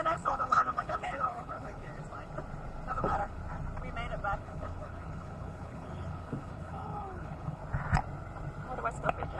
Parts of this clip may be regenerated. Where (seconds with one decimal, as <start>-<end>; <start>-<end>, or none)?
0.0-1.9; 2.9-3.4; 4.4-7.6; 8.9-9.4